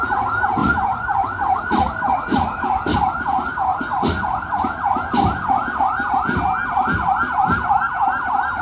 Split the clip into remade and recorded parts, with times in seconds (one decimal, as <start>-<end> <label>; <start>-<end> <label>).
0.0-0.6 recorded; 0.6-2.6 remade; 2.6-3.7 recorded; 3.7-4.5 remade; 4.5-8.6 recorded